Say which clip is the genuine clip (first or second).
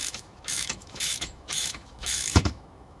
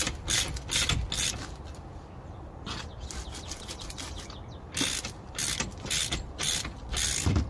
second